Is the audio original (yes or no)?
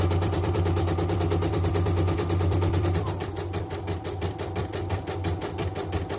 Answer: no